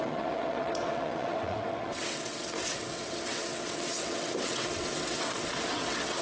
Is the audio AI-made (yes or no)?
yes